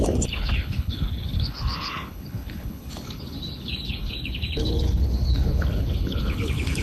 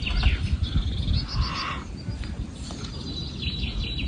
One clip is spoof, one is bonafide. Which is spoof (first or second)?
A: first